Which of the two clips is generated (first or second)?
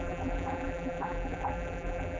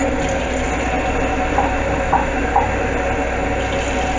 first